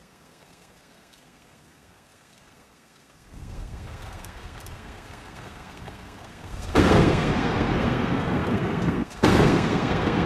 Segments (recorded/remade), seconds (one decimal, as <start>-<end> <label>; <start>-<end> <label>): 0.0-10.3 remade